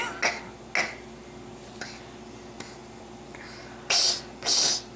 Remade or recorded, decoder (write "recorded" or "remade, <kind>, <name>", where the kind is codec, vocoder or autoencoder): recorded